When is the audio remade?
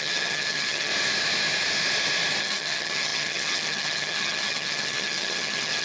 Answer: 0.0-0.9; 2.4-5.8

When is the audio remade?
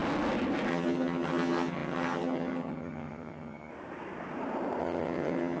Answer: 0.7-3.7; 4.8-5.6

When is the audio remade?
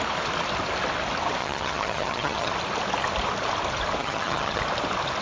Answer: 1.4-2.5; 4.0-4.6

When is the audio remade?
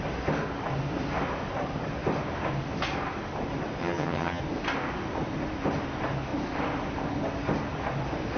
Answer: 3.8-4.4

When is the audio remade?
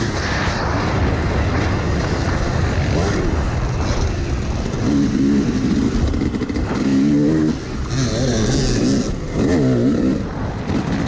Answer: none